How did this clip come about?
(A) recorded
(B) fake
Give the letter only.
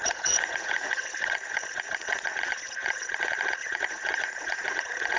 B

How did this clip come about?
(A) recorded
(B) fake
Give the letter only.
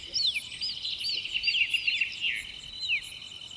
A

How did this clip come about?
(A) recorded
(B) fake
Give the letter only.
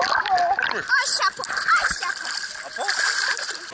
A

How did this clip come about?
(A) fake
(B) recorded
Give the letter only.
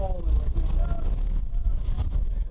B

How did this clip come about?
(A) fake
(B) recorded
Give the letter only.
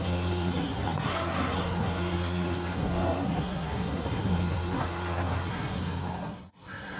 A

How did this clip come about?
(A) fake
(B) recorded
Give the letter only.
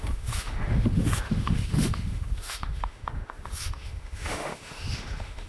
A